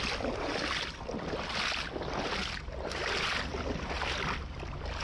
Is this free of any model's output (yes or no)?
yes